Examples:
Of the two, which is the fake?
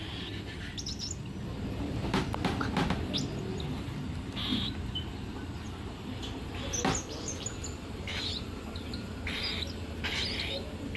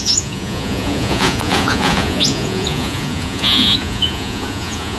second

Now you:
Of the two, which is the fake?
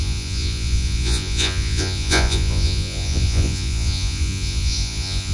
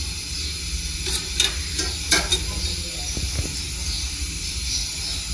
first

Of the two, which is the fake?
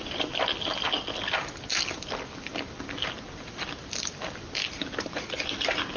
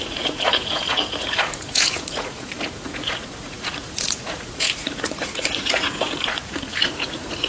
second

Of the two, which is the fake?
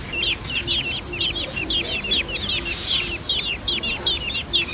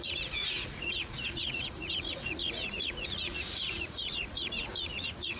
second